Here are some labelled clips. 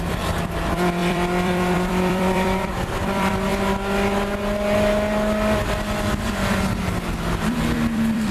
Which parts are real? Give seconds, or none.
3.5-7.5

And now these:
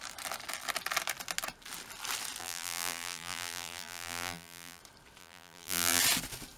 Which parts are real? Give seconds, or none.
0.0-2.4; 4.8-5.2; 6.0-6.6

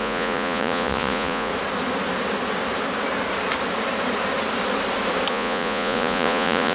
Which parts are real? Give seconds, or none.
1.5-5.3

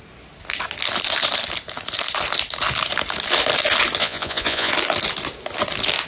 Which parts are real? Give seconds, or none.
0.0-4.0; 4.7-6.1

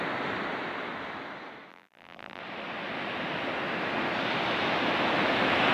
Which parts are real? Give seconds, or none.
0.0-1.7; 2.4-5.7

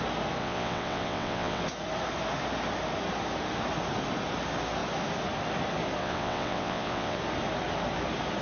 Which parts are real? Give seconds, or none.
0.0-0.4; 1.6-6.0; 7.2-8.4

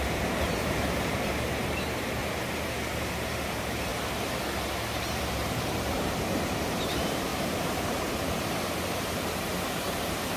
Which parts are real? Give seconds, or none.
2.2-3.1; 3.9-5.0